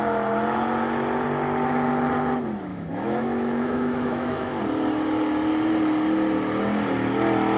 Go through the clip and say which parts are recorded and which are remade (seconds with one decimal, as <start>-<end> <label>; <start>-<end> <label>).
0.0-2.7 recorded; 2.7-4.6 remade; 4.6-7.6 recorded